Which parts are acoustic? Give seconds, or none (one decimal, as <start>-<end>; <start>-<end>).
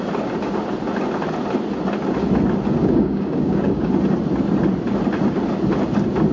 0.0-2.8; 3.9-6.3